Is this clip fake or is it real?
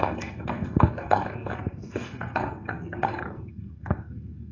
fake